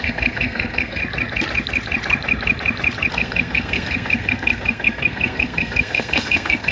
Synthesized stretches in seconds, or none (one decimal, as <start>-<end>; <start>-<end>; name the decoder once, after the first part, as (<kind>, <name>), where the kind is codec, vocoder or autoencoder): 0.0-1.0 (codec, SNAC); 3.1-6.7